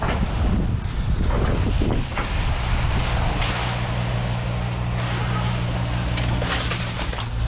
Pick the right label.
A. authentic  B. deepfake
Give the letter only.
A